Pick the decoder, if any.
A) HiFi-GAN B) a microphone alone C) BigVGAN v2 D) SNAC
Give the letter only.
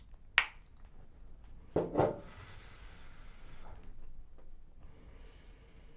B